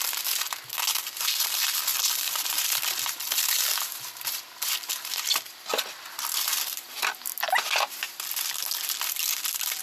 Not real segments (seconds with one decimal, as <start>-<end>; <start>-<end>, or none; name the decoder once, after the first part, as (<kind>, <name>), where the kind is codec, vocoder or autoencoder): 1.9-5.8 (vocoder, BigVGAN v2)

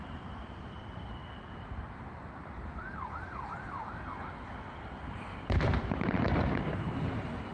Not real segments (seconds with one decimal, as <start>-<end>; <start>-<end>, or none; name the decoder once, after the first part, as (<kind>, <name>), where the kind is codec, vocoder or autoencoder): 0.0-1.2 (vocoder, BigVGAN v2); 4.9-7.5

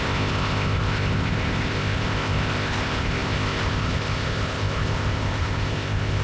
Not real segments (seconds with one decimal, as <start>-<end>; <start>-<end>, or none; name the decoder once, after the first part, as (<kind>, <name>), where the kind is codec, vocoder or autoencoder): 0.0-6.2 (codec, ZipCodec)

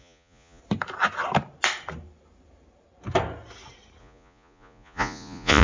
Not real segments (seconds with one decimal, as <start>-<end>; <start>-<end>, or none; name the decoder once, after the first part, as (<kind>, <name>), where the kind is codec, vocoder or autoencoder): 0.0-0.6 (vocoder, Vocos); 4.0-5.6

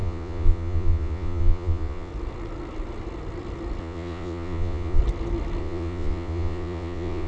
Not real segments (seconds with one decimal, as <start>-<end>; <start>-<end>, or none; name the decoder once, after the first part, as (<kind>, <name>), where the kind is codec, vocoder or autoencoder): 0.0-2.1 (vocoder, Vocos); 3.8-5.0; 5.6-7.3

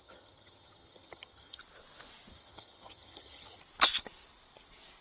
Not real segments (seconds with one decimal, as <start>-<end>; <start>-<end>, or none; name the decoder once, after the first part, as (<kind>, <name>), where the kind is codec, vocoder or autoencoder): 0.0-1.6 (vocoder, HiFi-GAN); 2.3-3.6

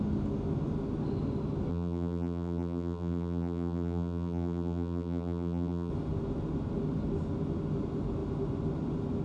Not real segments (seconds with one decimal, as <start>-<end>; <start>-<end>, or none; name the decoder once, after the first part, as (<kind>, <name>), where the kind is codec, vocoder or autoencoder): 1.7-5.9 (vocoder, BigVGAN v2)